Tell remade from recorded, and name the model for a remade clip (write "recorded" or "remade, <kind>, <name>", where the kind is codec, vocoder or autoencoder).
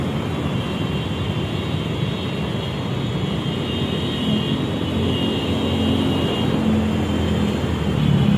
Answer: recorded